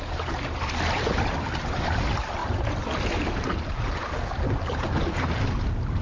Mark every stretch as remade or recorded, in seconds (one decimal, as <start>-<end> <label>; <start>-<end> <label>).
0.0-6.0 recorded